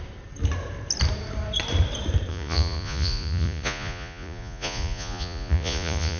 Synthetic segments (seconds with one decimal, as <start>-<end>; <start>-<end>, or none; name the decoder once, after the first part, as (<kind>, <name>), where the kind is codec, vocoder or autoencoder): 2.3-6.2 (vocoder, Vocos)